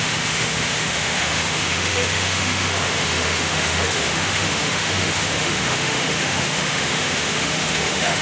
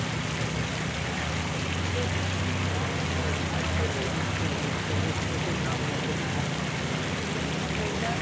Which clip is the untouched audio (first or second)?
second